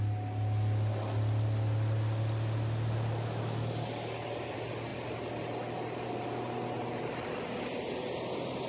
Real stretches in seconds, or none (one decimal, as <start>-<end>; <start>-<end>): 0.0-8.7